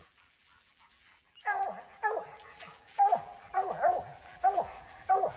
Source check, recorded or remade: remade